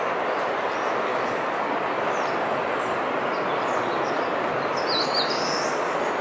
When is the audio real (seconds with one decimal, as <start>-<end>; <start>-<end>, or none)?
0.0-6.2